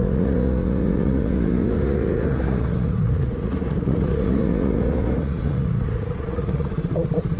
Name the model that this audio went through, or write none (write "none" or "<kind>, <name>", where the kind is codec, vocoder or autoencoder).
vocoder, Vocos